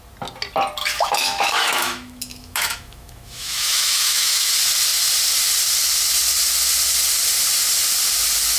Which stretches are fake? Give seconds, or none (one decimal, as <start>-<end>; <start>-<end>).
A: 0.8-4.5